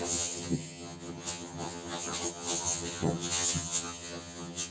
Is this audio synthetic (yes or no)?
yes